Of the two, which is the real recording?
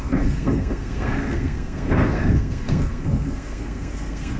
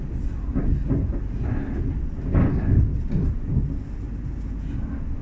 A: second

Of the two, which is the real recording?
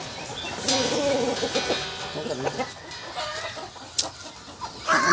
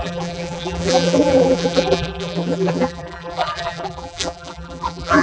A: first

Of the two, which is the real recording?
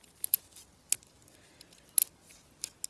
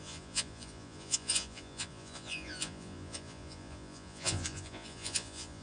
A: first